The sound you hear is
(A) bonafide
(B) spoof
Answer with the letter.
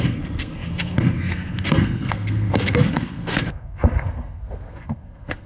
B